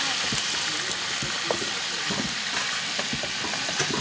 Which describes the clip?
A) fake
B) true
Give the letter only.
B